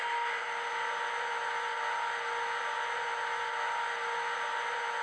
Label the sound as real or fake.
real